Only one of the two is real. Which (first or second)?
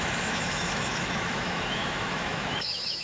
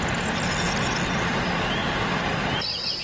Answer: second